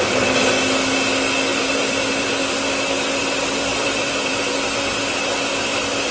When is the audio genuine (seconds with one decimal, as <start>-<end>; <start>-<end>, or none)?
0.0-1.5; 2.3-3.7; 5.0-6.1